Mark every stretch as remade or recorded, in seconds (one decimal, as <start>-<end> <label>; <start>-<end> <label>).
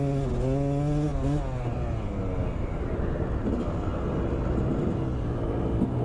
0.0-6.0 recorded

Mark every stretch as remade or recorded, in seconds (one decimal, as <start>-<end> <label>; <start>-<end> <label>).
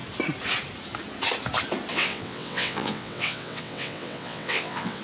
0.0-1.9 recorded; 1.9-5.0 remade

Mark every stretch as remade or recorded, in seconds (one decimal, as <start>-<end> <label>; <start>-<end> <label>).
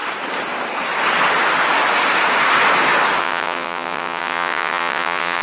0.0-3.2 recorded; 3.2-5.4 remade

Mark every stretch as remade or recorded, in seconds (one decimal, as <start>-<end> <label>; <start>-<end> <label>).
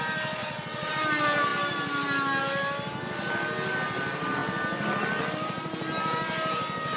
0.0-0.4 recorded; 0.4-0.9 remade; 0.9-7.0 recorded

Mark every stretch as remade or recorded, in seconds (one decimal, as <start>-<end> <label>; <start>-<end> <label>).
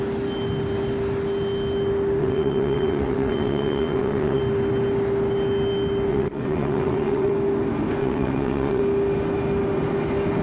0.0-2.2 recorded; 2.2-4.4 remade; 4.4-6.1 recorded; 6.1-7.3 remade; 7.3-8.0 recorded; 8.0-8.8 remade; 8.8-10.4 recorded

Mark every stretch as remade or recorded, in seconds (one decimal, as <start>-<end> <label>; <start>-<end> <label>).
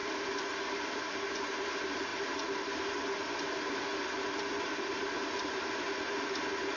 0.0-6.8 recorded